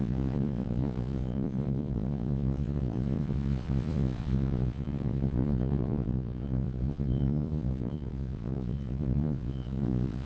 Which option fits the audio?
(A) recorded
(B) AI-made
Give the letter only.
B